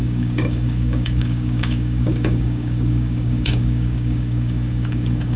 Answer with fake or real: fake